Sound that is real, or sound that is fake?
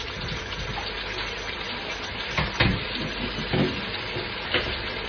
real